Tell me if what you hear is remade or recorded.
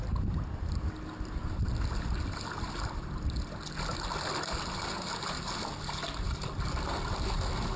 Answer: recorded